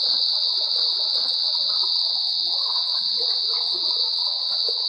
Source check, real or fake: fake